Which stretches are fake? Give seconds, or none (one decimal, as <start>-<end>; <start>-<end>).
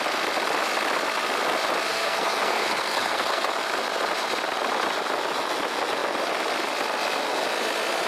1.9-3.5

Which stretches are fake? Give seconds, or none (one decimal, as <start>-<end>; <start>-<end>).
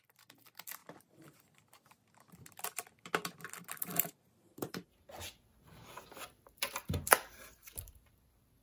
0.0-0.8; 3.8-8.6